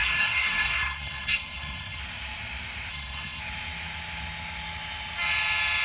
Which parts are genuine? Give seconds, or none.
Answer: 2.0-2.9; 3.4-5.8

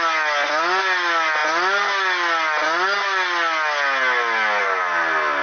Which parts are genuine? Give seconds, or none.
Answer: 0.0-5.4